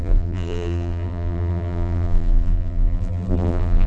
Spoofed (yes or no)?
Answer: yes